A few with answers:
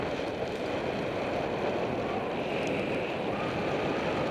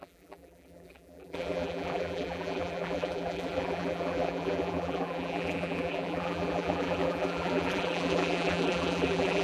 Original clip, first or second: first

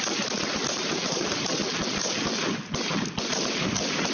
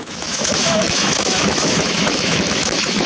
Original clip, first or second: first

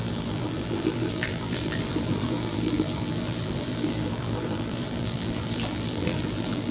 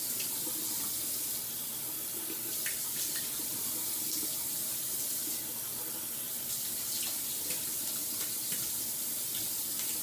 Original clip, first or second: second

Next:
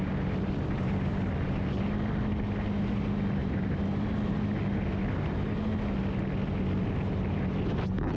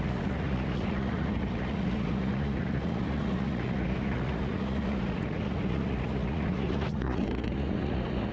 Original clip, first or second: first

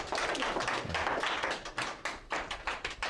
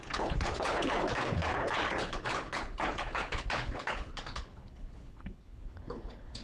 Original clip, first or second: first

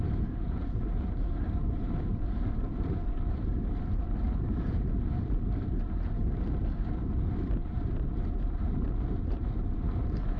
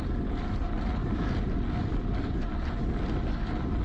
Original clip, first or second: second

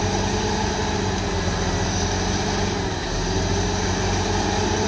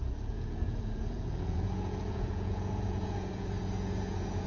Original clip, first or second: first